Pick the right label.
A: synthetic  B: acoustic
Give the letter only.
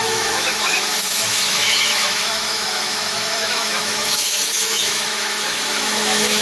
A